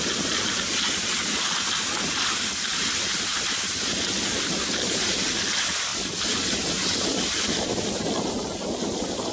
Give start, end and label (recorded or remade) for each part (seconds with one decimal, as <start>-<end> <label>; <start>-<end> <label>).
0.0-9.3 recorded